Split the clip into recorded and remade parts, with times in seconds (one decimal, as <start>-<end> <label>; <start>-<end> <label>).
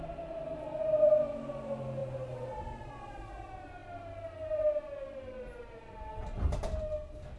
0.0-7.4 recorded